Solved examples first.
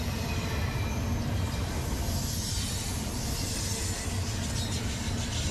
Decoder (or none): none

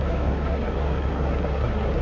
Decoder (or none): codec, SNAC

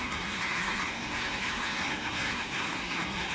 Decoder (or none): codec, SNAC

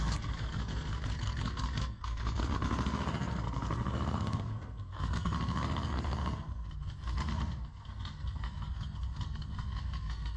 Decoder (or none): codec, SNAC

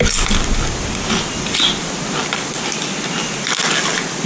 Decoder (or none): none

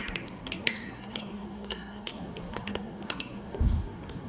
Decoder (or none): codec, SNAC